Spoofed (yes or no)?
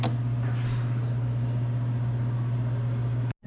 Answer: no